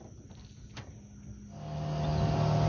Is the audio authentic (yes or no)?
yes